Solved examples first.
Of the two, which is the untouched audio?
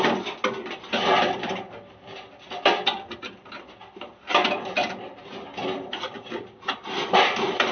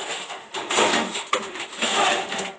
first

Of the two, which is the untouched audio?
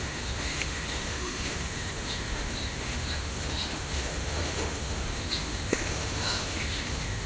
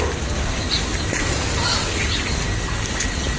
second